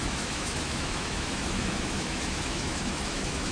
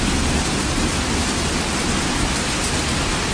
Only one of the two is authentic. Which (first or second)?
second